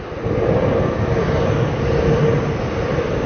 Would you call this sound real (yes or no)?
yes